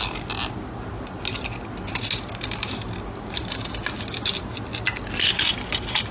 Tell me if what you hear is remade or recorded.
recorded